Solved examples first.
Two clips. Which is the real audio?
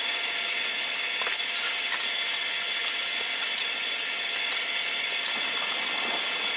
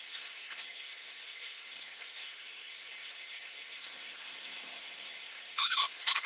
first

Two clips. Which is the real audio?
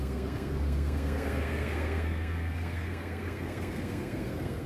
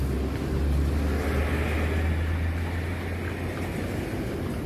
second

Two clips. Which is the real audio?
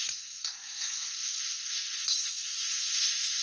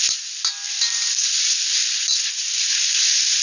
second